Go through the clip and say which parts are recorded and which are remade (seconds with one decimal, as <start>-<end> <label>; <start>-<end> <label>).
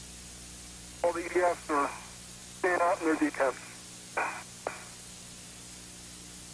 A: 0.0-6.5 recorded